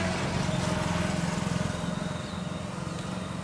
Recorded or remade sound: recorded